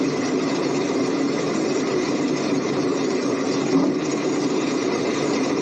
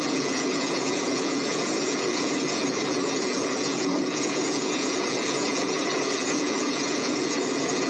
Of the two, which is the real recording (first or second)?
first